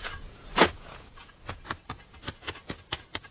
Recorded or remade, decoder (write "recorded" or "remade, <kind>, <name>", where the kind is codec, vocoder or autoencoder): remade, vocoder, Vocos